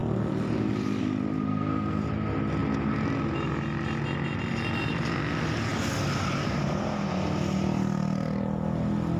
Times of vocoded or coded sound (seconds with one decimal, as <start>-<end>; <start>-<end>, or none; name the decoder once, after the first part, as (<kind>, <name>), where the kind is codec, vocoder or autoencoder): 1.5-2.0 (codec, SNAC)